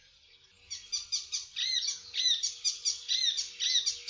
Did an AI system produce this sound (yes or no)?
no